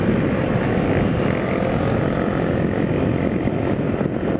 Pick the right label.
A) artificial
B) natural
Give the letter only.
B